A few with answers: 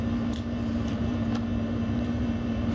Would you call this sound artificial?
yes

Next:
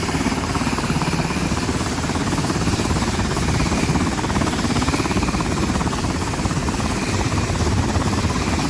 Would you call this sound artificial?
yes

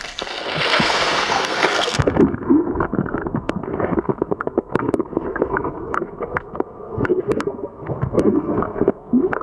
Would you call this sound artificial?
yes